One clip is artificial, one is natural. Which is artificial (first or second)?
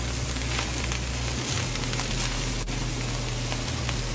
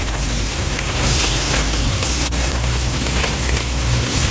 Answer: second